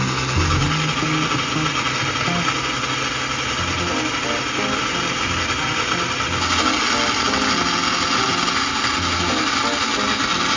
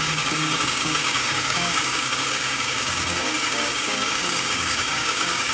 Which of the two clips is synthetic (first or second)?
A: second